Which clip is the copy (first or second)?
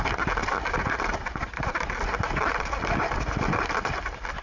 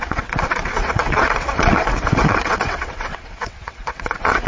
second